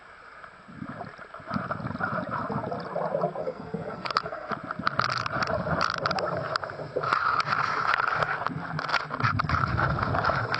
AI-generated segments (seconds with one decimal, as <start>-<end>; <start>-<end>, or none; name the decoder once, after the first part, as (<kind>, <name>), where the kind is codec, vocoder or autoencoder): 3.4-4.5 (codec, SNAC)